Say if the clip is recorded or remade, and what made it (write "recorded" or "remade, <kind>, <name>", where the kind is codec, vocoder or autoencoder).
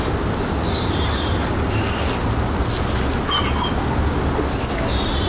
recorded